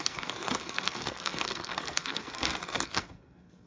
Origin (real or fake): fake